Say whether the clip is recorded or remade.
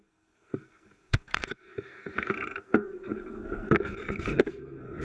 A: remade